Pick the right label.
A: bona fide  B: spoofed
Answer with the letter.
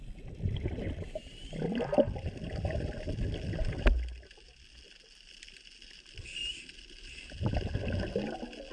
A